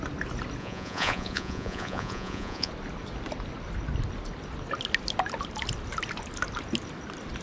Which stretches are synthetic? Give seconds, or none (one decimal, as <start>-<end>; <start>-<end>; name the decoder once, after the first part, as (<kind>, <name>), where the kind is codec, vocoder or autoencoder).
0.6-2.7 (vocoder, Vocos)